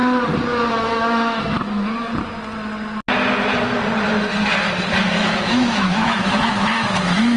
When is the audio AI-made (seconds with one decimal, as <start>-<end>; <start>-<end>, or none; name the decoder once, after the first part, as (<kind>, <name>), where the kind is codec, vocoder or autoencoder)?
0.7-2.1 (autoencoder, DAC-VAE); 5.1-7.4